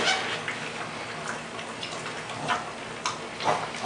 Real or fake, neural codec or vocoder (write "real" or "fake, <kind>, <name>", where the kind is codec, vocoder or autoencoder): real